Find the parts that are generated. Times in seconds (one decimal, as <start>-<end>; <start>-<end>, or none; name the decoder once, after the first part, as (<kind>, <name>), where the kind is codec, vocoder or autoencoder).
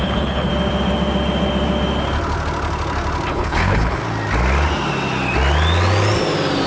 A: 0.0-0.5 (codec, HILCodec); 3.3-4.0